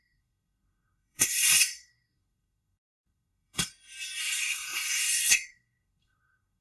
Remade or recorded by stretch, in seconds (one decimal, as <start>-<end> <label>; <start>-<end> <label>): 0.0-3.7 remade; 3.7-4.2 recorded; 4.2-6.6 remade